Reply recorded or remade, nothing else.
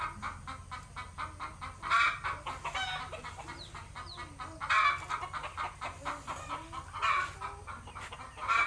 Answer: recorded